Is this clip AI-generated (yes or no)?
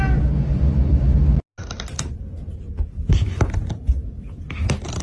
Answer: no